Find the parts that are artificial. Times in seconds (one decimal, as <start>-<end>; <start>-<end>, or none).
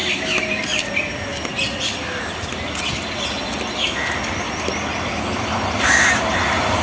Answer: none